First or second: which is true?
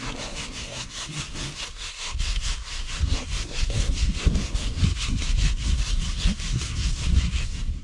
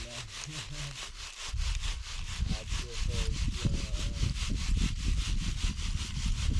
second